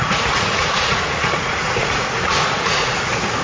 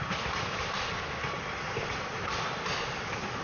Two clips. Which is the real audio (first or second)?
second